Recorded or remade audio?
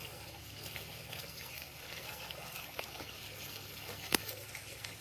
remade